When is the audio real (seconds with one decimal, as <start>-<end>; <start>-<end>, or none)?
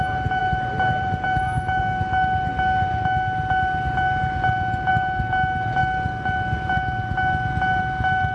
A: 0.0-0.4; 1.8-8.3